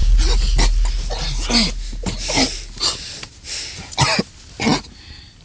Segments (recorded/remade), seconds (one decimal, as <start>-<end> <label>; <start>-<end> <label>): 0.0-5.4 recorded

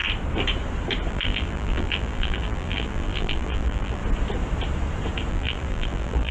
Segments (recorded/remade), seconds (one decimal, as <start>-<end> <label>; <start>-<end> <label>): 0.0-1.1 recorded; 1.1-4.0 remade; 4.0-5.3 recorded; 5.3-6.3 remade